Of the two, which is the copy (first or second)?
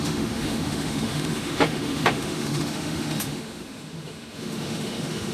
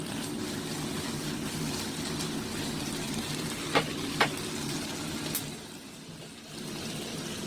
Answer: first